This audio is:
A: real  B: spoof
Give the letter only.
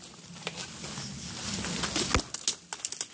A